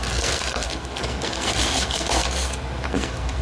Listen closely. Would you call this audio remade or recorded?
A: remade